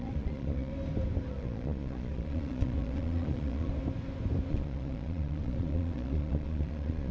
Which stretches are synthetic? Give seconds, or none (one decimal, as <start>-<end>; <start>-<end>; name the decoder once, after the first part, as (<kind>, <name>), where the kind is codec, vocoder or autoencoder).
0.0-0.7 (vocoder, Vocos); 1.3-3.7; 4.5-7.1